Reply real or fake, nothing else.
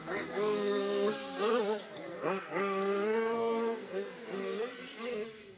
fake